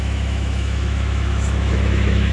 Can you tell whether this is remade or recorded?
remade